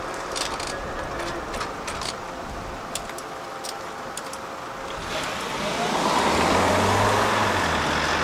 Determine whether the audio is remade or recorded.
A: recorded